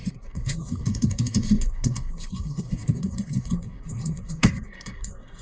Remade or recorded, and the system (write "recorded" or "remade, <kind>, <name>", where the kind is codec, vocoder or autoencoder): remade, codec, SNAC